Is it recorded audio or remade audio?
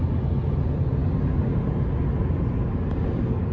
recorded